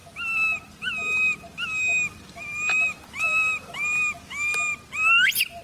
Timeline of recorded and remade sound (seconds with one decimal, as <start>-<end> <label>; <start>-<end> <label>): 0.0-5.6 recorded